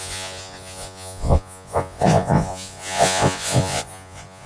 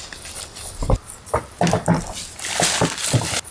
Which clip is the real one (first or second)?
second